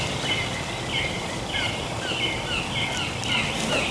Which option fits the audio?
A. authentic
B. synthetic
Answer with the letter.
A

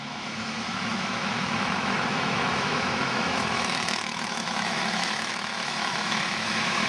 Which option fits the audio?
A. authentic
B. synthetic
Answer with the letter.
B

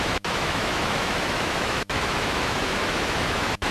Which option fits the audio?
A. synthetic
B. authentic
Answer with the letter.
A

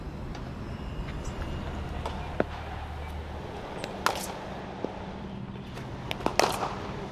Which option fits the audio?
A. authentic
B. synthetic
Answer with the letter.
A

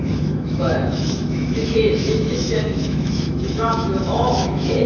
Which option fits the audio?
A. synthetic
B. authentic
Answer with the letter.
A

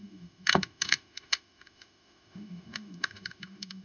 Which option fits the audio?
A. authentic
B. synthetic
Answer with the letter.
B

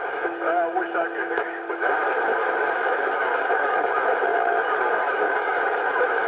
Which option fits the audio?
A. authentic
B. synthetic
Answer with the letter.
B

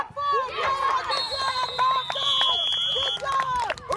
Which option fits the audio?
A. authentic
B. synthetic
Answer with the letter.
A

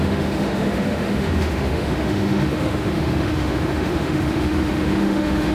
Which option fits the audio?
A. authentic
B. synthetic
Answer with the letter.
B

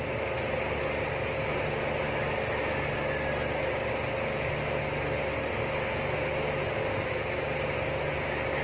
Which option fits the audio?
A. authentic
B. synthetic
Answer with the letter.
A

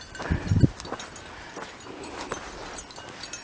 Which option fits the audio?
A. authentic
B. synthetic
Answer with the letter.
A